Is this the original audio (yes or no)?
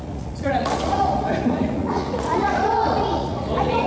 no